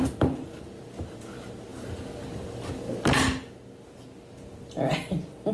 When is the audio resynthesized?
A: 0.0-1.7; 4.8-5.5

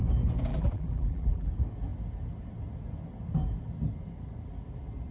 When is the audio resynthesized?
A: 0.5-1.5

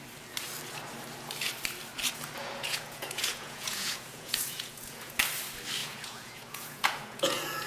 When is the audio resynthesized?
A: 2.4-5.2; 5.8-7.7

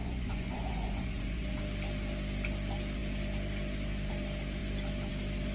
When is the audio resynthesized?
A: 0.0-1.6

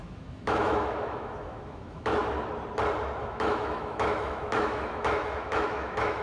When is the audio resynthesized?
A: 0.0-2.2; 3.2-6.2

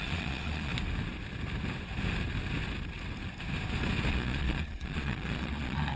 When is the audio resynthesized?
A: 0.0-0.7; 4.1-6.0

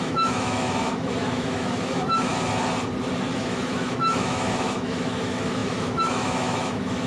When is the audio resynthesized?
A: 0.0-2.3; 3.4-7.1

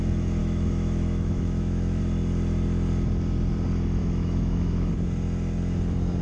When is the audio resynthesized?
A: 0.4-2.0; 4.0-4.9